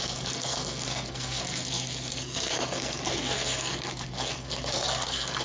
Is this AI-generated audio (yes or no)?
yes